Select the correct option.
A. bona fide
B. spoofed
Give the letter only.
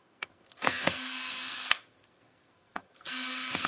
B